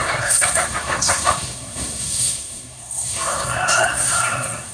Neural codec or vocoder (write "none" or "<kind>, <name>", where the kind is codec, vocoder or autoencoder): codec, SNAC